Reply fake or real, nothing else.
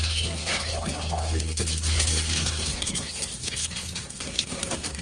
fake